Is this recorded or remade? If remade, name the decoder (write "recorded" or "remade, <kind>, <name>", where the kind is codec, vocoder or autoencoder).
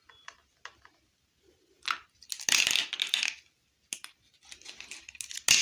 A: recorded